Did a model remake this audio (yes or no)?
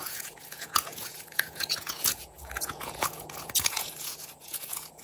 yes